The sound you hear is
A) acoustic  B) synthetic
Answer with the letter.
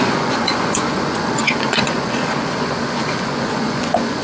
B